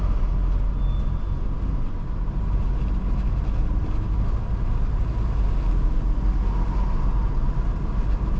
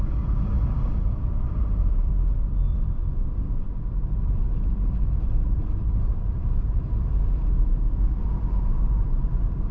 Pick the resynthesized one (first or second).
second